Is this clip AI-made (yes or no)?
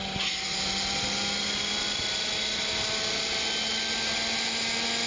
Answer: no